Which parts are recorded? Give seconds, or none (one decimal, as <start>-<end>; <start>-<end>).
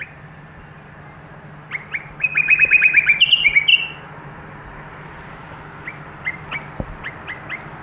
0.0-7.8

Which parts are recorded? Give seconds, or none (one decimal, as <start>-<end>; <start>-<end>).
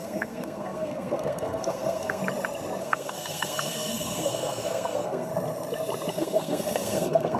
2.2-2.8; 5.3-6.1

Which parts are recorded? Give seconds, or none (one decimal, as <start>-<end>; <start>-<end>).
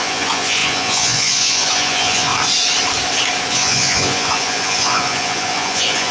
2.3-3.5